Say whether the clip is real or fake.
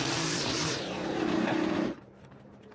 fake